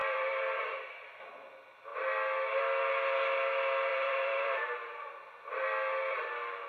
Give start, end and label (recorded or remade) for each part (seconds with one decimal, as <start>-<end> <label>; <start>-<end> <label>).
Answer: 0.0-0.9 remade; 0.9-3.9 recorded; 3.9-5.1 remade; 5.1-6.7 recorded